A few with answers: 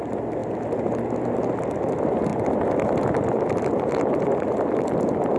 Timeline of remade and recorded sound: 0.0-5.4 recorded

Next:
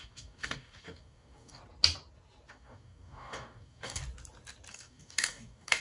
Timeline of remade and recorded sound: 0.0-1.6 remade; 1.6-2.5 recorded; 2.5-4.0 remade; 4.0-4.7 recorded; 4.7-5.8 remade

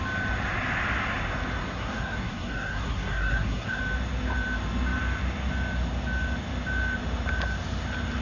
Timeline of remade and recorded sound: 0.0-1.6 recorded; 1.6-3.8 remade; 3.8-8.2 recorded

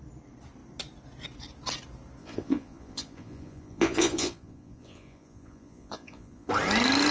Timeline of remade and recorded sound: 0.0-2.2 recorded; 2.2-6.5 remade; 6.5-7.1 recorded

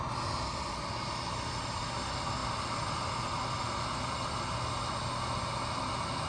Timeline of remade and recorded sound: 0.0-6.3 recorded

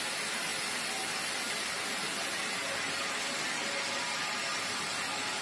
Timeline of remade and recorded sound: 0.0-5.4 recorded